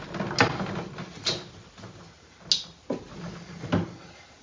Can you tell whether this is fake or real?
real